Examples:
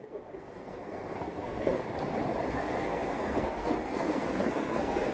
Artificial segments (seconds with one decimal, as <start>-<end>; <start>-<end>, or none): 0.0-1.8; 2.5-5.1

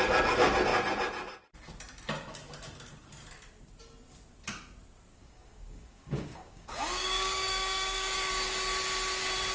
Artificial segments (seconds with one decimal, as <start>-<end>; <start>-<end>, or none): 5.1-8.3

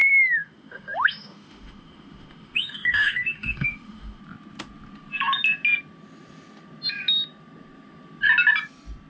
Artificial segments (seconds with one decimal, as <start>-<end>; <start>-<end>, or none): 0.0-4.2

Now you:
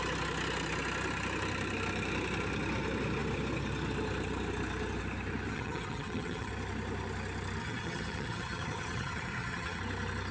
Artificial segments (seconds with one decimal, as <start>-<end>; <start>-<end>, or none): 5.5-6.5; 7.6-9.8

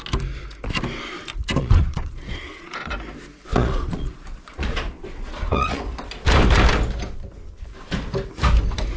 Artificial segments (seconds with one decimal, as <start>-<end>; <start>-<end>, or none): 1.6-2.9; 3.5-5.8

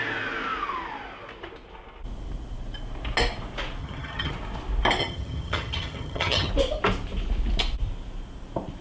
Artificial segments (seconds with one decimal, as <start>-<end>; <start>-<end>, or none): 3.8-4.3; 5.0-6.5

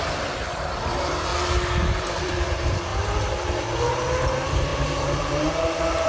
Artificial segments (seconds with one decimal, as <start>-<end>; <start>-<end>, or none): 0.0-1.3; 1.8-2.9; 3.9-6.1